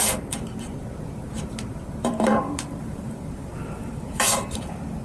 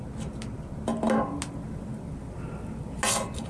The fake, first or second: first